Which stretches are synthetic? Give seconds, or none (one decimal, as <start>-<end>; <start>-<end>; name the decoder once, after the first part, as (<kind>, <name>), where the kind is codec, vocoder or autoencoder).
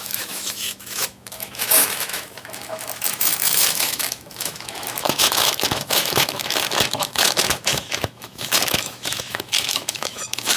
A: 0.0-10.6 (autoencoder, DAC-VAE)